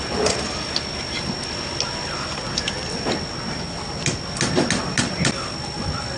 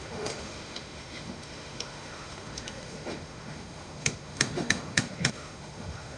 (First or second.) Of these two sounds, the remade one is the second